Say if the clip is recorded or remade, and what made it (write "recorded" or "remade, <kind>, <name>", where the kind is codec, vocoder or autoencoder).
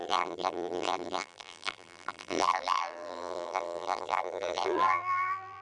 remade, vocoder, BigVGAN v2